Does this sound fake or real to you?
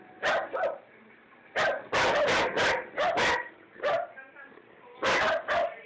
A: real